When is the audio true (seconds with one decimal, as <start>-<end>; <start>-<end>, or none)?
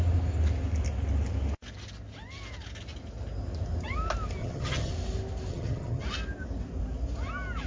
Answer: 0.0-4.4; 4.9-5.5; 6.0-7.7